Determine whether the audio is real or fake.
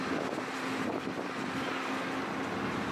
real